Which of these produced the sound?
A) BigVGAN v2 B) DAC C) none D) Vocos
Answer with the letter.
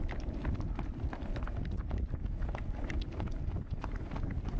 C